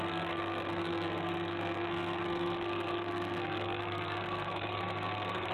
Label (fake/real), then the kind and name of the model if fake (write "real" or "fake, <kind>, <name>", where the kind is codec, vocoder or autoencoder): fake, codec, SNAC